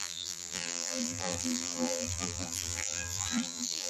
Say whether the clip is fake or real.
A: fake